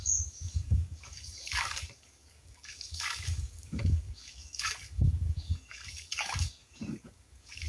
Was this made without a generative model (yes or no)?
no